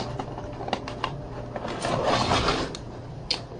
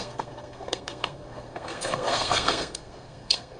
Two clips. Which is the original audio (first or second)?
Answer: first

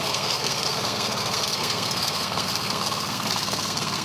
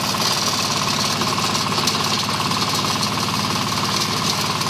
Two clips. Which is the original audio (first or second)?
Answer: second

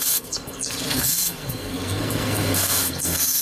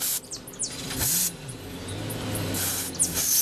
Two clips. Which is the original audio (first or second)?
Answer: second